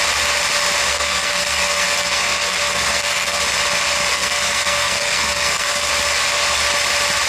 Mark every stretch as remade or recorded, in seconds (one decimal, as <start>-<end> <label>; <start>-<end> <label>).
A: 0.0-0.9 recorded; 0.9-3.4 remade; 3.4-4.1 recorded; 4.1-5.9 remade; 5.9-7.3 recorded